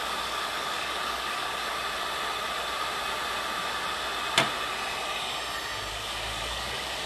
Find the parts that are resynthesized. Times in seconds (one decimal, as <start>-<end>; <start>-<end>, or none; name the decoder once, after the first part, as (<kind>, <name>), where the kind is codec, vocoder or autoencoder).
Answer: 0.0-1.6 (codec, DAC); 5.9-7.1